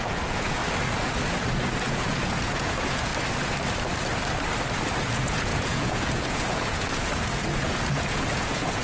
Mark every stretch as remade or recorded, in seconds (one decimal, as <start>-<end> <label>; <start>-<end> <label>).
0.0-0.6 remade; 0.6-1.8 recorded; 1.8-3.1 remade; 3.1-5.0 recorded; 5.0-8.8 remade